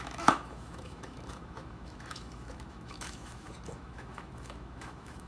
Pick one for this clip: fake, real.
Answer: fake